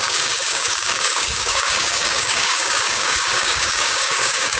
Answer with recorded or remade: remade